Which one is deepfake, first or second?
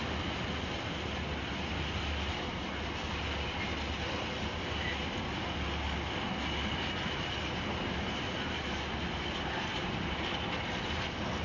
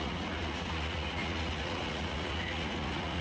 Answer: second